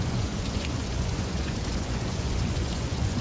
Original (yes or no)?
no